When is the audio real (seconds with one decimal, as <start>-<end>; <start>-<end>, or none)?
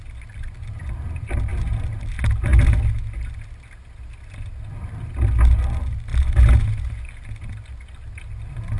0.0-8.8